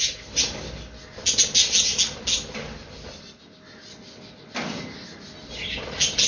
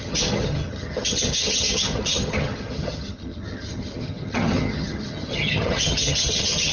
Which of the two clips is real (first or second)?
first